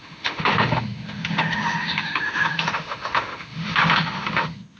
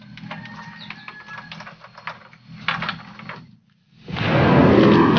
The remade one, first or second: first